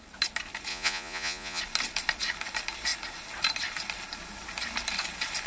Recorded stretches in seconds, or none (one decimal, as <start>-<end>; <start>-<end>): 0.0-0.7; 1.6-5.5